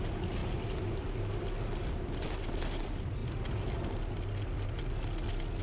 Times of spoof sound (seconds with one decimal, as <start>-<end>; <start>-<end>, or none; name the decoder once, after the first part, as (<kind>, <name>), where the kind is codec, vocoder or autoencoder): none